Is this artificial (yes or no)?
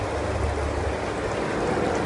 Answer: no